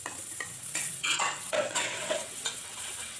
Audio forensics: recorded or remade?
remade